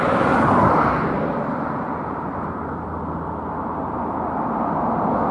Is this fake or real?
real